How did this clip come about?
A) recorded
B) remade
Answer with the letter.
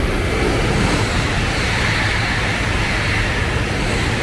A